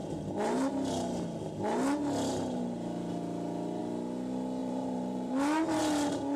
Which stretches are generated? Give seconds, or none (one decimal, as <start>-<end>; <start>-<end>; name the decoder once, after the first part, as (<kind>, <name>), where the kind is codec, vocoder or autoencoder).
4.6-5.8 (vocoder, BigVGAN v2)